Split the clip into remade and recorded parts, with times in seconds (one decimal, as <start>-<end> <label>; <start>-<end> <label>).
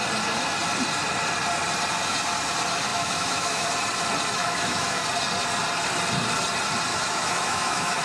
0.0-2.9 recorded; 2.9-3.7 remade; 3.7-4.4 recorded; 4.4-5.0 remade; 5.0-6.9 recorded; 6.9-8.0 remade